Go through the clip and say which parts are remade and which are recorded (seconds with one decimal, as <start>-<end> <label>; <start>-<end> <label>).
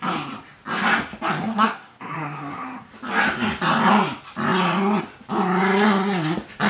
0.0-1.4 recorded; 1.4-2.9 remade; 2.9-6.7 recorded